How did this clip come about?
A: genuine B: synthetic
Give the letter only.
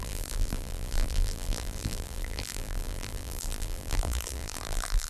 B